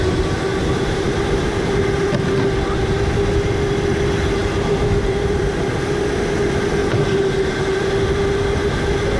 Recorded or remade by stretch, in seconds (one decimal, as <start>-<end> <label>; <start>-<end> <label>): 0.0-0.5 recorded; 0.5-1.2 remade; 1.2-4.4 recorded; 4.4-5.5 remade; 5.5-6.8 recorded; 6.8-7.9 remade; 7.9-9.2 recorded